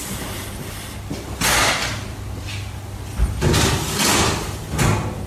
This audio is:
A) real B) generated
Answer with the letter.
A